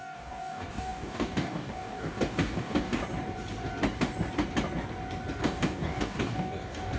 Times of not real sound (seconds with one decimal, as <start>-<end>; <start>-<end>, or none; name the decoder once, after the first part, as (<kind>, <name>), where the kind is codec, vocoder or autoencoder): 0.0-3.0 (codec, DAC); 5.4-7.0